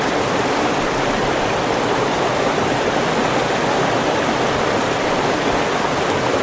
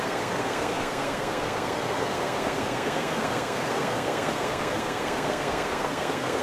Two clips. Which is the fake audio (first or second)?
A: second